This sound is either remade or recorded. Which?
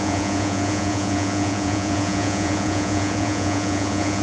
remade